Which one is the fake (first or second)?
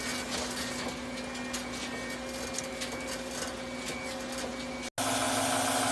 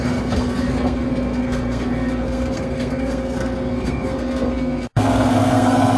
second